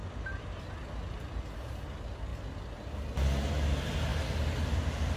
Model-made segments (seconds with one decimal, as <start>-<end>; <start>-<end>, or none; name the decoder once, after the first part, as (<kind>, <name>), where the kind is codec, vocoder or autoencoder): none

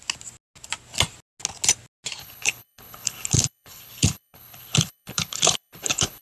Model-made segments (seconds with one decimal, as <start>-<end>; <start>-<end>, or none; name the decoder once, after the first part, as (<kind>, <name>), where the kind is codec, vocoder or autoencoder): 2.2-6.2 (codec, HILCodec)

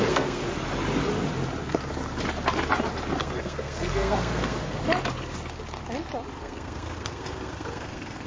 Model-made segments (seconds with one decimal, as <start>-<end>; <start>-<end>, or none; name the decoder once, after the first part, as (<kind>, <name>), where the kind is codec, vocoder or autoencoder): 0.0-0.4 (codec, SNAC); 3.2-4.8; 6.4-8.3